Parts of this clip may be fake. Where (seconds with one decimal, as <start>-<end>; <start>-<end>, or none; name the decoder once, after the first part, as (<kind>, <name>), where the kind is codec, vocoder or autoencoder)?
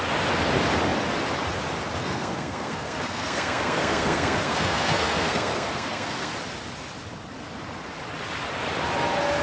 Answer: 2.0-6.3 (codec, SNAC)